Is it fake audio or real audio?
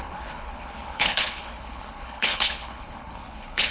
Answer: fake